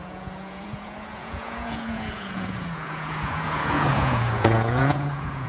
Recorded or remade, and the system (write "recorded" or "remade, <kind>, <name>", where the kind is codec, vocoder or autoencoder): remade, vocoder, Vocos